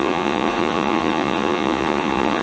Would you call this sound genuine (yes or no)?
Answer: no